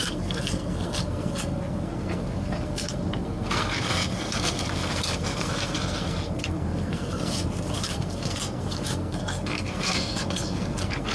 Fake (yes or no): yes